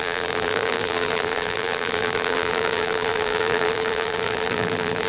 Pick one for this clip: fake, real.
fake